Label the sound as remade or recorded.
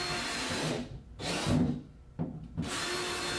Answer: recorded